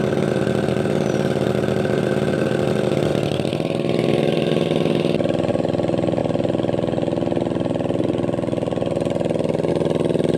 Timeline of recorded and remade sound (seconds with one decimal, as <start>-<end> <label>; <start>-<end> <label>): 0.0-10.4 recorded